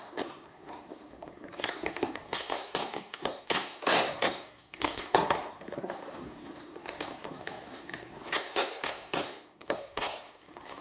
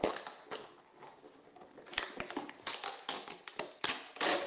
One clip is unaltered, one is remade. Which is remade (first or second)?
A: first